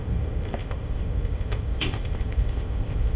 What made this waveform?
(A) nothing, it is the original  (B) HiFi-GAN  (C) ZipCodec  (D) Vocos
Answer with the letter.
C